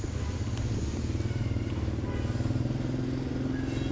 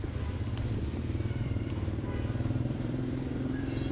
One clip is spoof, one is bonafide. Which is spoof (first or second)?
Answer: second